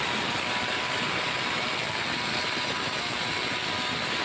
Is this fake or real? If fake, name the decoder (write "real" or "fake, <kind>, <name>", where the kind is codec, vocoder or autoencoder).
fake, vocoder, BigVGAN v2